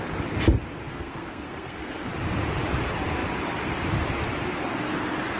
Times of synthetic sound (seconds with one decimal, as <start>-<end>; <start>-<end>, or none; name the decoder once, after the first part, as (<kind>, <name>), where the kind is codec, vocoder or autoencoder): 0.9-2.1 (codec, SNAC)